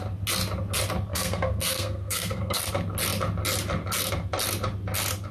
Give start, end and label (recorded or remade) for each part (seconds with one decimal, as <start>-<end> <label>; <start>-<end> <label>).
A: 0.0-1.1 recorded; 1.1-2.6 remade; 2.6-5.3 recorded